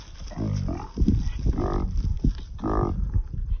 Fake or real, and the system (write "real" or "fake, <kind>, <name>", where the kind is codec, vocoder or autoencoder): real